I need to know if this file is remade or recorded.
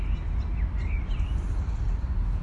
recorded